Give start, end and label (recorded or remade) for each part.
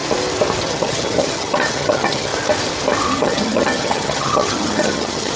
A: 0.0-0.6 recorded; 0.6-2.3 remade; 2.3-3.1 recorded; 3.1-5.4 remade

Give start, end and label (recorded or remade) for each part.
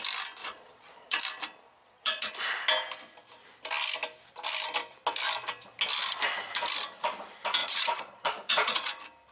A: 0.0-0.4 recorded; 0.4-1.2 remade; 1.2-1.8 recorded; 1.8-2.3 remade; 2.3-7.6 recorded; 7.6-8.9 remade; 8.9-9.3 recorded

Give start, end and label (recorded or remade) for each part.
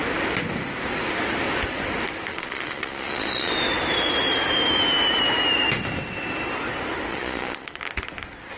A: 0.0-2.3 recorded; 2.3-3.5 remade; 3.5-7.1 recorded; 7.1-7.8 remade; 7.8-8.6 recorded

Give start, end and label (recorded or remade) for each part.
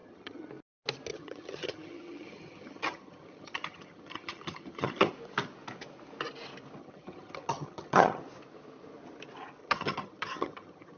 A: 0.0-0.5 remade; 0.5-1.1 recorded; 1.1-5.1 remade; 5.1-6.8 recorded; 6.8-8.2 remade; 8.2-9.6 recorded; 9.6-11.0 remade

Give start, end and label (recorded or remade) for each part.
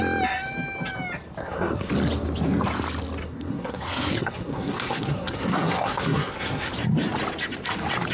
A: 0.0-1.4 recorded; 1.4-1.9 remade; 1.9-3.2 recorded; 3.2-6.7 remade; 6.7-8.1 recorded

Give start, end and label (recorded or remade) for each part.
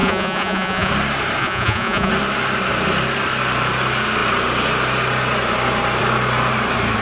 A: 0.0-0.9 remade; 0.9-1.4 recorded; 1.4-2.1 remade; 2.1-7.0 recorded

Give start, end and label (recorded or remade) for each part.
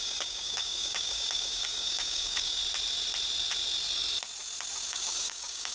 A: 0.0-2.6 remade; 2.6-4.9 recorded; 4.9-5.7 remade